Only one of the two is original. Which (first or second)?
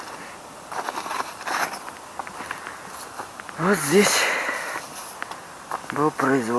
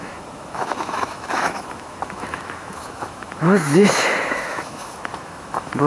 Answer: first